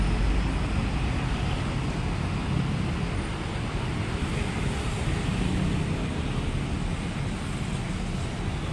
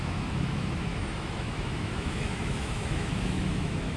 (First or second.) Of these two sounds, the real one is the first